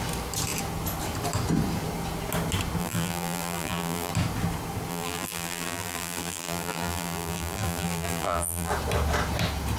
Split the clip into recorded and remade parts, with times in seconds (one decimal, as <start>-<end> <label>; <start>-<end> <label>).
0.0-2.8 recorded; 2.8-4.1 remade; 4.1-4.9 recorded; 4.9-8.7 remade; 8.7-9.8 recorded